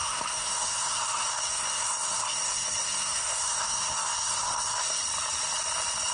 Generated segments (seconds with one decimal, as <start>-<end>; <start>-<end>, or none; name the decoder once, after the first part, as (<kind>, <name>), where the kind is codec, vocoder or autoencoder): 0.0-5.0 (codec, SNAC)